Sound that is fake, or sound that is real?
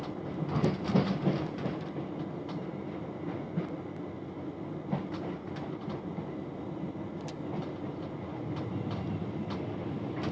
real